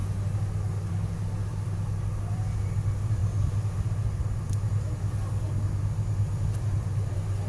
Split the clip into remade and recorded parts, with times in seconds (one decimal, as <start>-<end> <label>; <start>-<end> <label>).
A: 0.0-7.5 recorded